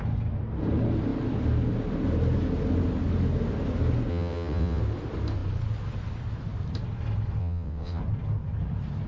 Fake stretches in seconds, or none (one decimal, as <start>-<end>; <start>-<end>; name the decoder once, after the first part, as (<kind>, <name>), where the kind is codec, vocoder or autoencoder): 4.1-4.8 (vocoder, WaveNeXt); 7.4-8.0